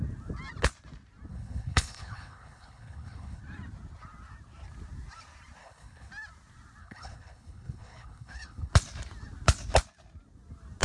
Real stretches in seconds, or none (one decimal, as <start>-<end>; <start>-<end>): 0.0-1.3; 3.4-5.6; 6.1-6.8; 8.7-10.8